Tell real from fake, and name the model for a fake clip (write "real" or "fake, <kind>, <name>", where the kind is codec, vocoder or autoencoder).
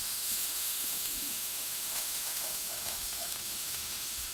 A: fake, autoencoder, DAC-VAE